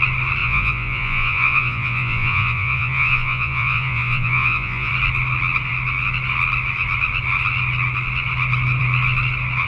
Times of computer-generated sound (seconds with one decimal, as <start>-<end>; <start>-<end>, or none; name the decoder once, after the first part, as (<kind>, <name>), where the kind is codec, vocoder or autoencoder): 0.4-4.9 (vocoder, Vocos)